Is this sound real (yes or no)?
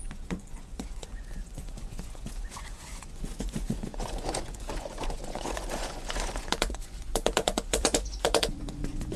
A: no